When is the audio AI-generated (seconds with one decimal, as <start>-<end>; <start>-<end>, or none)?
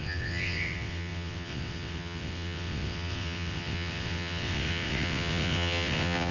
0.0-6.3